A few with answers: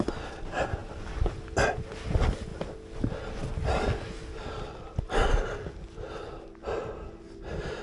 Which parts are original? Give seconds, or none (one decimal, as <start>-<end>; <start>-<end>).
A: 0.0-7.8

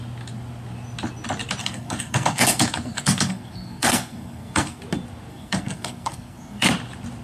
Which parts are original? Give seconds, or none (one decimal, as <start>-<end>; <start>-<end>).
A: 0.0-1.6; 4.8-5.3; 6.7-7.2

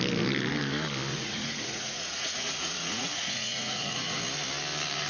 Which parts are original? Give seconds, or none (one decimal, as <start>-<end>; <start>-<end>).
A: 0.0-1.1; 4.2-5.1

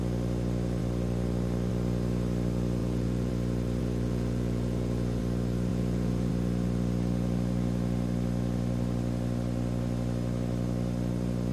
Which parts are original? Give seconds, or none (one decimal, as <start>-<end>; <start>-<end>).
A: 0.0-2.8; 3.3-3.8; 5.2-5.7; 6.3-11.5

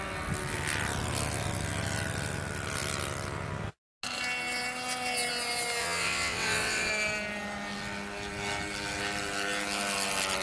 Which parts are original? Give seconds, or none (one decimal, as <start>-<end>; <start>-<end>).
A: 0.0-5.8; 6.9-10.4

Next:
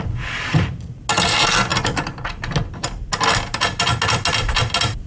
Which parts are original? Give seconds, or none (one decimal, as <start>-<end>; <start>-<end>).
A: 0.0-5.1

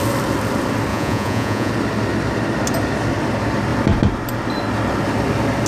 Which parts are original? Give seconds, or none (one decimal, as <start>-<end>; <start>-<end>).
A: 0.0-0.9; 1.7-5.7

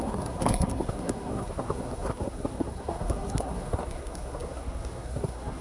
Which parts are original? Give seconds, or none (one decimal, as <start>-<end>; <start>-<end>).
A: none